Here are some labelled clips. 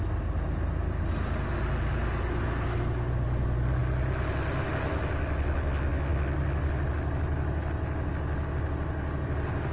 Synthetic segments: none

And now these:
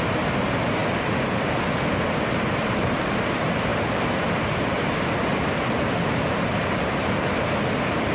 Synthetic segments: none

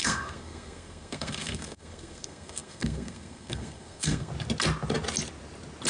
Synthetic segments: 0.0-4.3

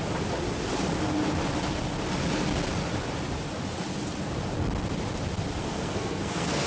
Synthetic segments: 5.6-6.7

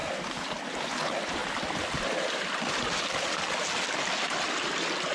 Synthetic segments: none

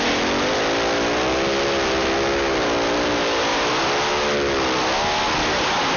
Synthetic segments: none